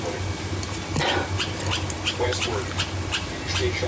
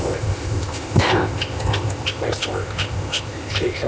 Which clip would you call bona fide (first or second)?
first